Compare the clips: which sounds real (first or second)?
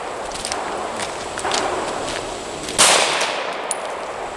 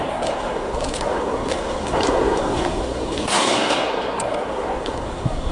first